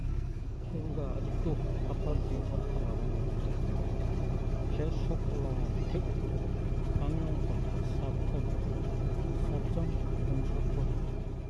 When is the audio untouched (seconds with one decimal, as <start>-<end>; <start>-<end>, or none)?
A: 0.8-2.1; 2.8-11.5